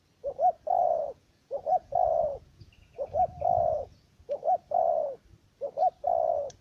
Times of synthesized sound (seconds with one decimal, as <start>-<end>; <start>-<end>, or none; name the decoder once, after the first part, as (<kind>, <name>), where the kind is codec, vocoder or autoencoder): 0.8-4.8 (vocoder, Vocos)